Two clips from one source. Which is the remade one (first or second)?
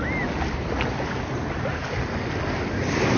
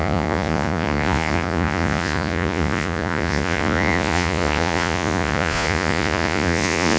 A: second